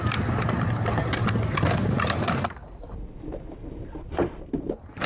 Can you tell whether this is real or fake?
real